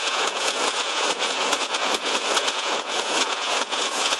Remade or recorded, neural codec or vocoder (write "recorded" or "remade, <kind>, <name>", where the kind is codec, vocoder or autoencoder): remade, vocoder, Vocos